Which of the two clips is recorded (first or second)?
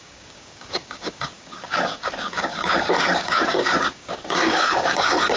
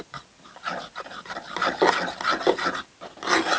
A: second